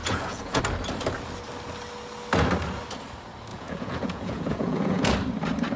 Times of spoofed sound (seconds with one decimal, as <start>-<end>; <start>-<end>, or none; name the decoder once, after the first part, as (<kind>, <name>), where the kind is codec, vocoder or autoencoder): 0.0-0.6 (vocoder, Vocos); 3.5-5.1